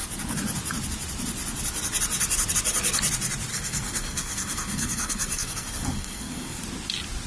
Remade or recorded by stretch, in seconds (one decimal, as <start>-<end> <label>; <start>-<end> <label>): 0.0-3.5 recorded; 3.5-6.6 remade; 6.6-7.3 recorded